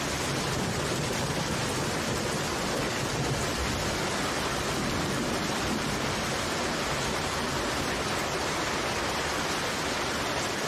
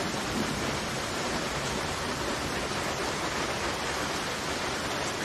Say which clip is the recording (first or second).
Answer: first